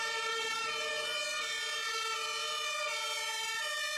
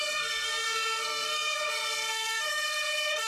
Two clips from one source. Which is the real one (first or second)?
first